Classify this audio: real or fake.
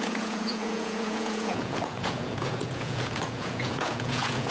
fake